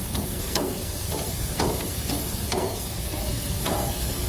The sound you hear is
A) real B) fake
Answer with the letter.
B